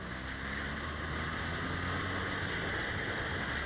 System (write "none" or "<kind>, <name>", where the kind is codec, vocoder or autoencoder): none